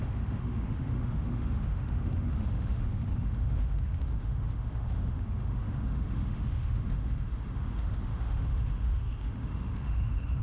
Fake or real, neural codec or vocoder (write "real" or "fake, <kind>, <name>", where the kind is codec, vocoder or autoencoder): fake, autoencoder, DAC-VAE